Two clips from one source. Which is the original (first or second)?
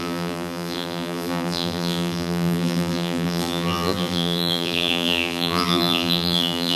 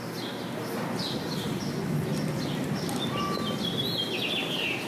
second